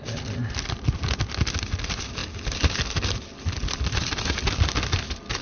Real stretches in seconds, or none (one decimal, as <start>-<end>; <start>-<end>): 0.0-5.4